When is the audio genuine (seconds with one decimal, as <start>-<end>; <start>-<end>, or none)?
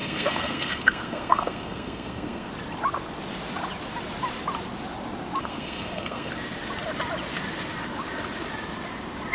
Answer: 2.5-5.4; 6.3-9.3